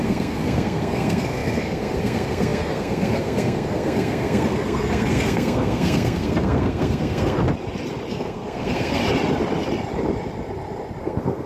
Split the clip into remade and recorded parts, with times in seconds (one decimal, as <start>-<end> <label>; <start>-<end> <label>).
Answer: 0.0-7.4 remade; 7.4-8.1 recorded; 8.1-9.0 remade; 9.0-11.0 recorded; 11.0-11.5 remade